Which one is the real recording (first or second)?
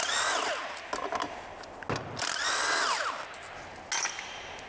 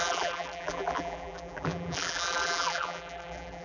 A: first